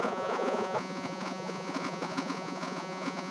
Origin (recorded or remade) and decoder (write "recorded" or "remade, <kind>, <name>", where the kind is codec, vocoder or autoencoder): remade, vocoder, Vocos